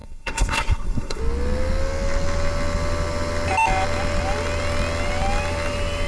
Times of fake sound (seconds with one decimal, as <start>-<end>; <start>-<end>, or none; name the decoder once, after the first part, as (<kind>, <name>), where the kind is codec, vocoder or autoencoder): 0.0-1.2 (codec, SNAC)